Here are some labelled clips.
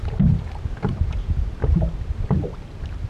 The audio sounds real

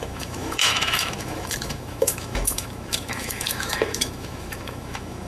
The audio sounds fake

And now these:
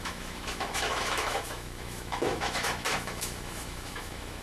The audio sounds fake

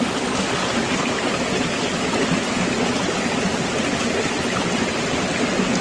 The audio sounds real